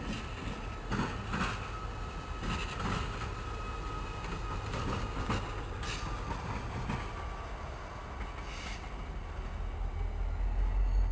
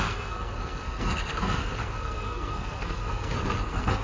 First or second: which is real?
first